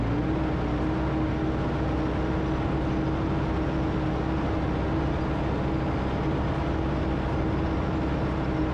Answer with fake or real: real